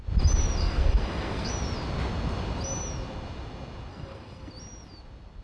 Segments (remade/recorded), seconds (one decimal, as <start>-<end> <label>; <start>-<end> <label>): 0.0-0.6 recorded; 0.6-1.5 remade; 1.5-3.9 recorded; 3.9-4.5 remade; 4.5-5.4 recorded